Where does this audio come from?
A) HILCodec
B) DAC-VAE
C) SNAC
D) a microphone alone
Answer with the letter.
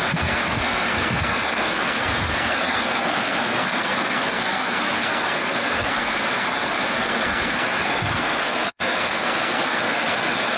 C